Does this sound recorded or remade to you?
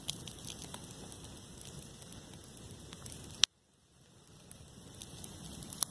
recorded